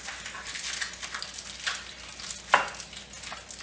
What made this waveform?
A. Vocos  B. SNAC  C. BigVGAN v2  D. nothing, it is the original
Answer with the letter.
D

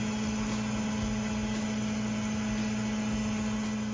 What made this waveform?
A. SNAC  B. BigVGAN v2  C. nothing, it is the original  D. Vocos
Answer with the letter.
C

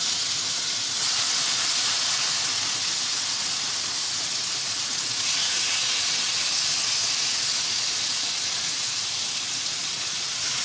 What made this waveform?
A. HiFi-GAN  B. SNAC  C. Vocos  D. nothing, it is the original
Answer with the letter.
C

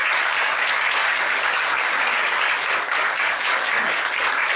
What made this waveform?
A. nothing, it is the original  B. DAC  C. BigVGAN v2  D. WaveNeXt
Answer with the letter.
B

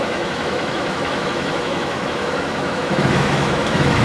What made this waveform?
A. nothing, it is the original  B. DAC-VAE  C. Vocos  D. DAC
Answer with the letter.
B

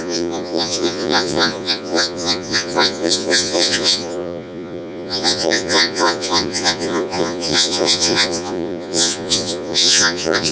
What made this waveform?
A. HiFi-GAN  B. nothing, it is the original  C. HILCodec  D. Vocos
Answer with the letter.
D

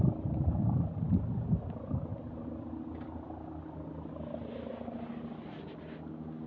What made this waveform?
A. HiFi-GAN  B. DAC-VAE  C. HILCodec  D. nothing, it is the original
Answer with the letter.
D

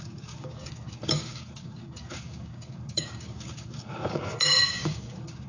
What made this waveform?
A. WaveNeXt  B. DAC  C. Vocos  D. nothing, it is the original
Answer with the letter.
B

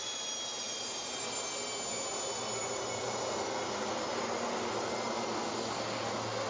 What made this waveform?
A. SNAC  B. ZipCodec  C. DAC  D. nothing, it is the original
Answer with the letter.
D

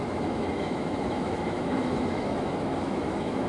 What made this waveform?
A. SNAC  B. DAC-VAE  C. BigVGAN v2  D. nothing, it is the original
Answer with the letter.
B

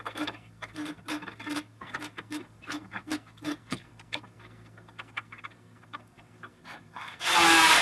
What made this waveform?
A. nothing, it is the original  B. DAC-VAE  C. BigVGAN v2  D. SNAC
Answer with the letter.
D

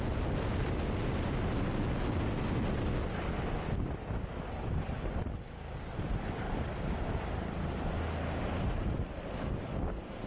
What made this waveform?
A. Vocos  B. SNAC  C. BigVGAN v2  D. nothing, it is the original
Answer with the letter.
D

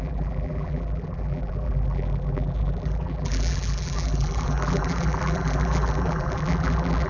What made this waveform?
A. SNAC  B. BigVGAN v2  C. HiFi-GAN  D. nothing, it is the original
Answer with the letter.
B